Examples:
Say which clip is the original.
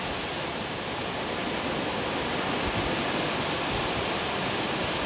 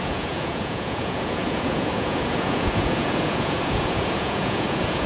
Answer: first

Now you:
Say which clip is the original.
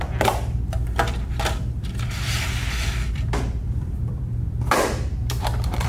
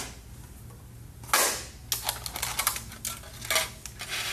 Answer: second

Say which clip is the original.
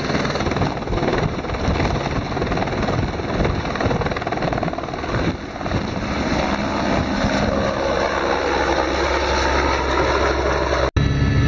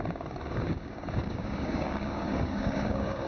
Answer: first